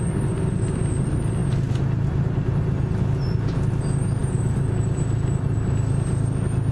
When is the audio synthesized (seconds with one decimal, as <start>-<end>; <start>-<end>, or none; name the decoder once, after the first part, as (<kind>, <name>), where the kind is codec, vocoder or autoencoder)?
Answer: none